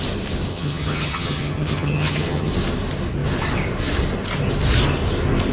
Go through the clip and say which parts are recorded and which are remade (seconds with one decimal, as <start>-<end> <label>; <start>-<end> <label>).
0.0-0.5 recorded; 0.5-2.5 remade; 2.5-5.5 recorded

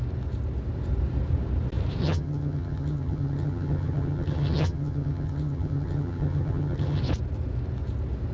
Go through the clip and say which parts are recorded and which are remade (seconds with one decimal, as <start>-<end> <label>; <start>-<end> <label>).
0.0-2.0 recorded; 2.0-7.0 remade; 7.0-8.3 recorded

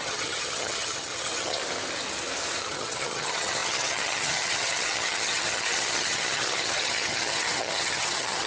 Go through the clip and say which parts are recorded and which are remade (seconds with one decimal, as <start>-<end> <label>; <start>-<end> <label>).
0.0-1.6 remade; 1.6-2.6 recorded; 2.6-8.5 remade

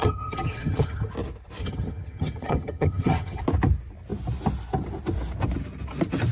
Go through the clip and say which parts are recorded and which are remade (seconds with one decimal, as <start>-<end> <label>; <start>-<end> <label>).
0.0-1.1 remade; 1.1-1.6 recorded; 1.6-3.4 remade; 3.4-6.3 recorded

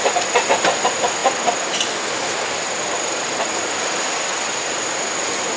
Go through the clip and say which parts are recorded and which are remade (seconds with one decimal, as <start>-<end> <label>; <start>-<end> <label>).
0.0-5.6 recorded

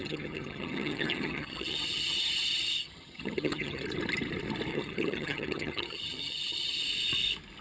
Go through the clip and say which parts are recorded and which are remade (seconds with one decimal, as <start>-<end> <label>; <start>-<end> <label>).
0.0-3.8 remade; 3.8-4.7 recorded; 4.7-6.8 remade; 6.8-7.6 recorded